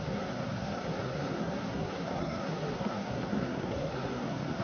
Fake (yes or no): yes